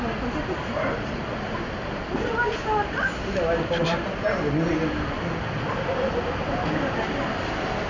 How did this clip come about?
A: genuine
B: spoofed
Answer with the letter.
A